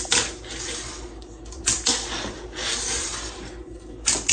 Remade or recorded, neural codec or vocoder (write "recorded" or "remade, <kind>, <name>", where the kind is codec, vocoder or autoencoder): recorded